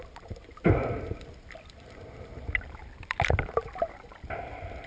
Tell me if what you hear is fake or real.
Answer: fake